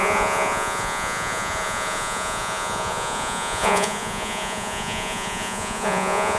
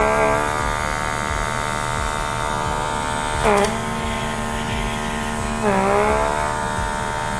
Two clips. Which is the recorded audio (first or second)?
second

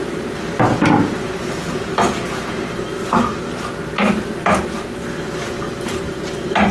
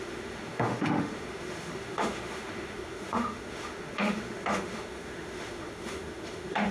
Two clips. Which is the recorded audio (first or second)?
first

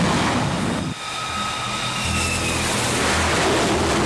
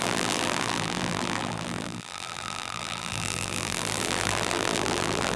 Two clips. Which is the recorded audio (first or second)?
first